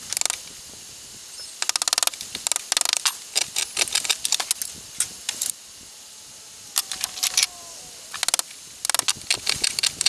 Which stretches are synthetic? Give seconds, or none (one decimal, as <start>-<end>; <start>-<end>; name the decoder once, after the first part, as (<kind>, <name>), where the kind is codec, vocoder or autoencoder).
none